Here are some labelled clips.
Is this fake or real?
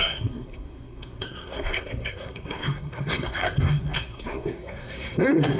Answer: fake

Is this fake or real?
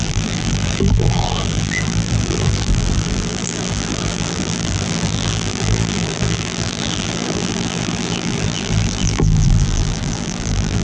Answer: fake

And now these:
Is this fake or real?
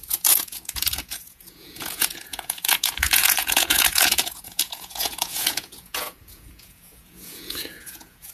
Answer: fake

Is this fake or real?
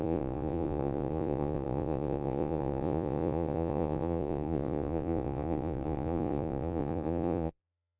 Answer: fake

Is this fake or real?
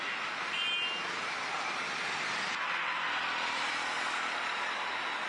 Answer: real